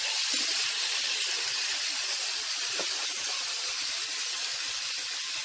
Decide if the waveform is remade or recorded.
recorded